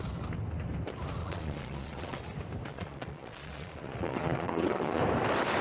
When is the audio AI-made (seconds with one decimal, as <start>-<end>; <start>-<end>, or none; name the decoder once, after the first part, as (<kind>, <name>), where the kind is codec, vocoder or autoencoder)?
1.2-2.2 (vocoder, Vocos); 2.7-5.0